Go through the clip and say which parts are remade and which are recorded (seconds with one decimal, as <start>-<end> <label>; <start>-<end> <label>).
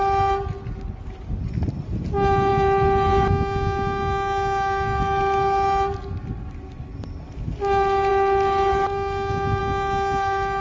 0.0-10.6 recorded